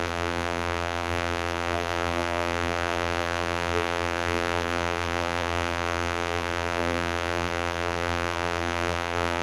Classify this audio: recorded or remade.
remade